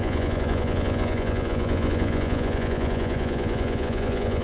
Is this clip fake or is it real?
fake